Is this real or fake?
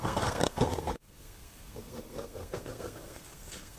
fake